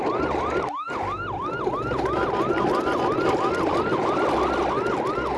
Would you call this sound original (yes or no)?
yes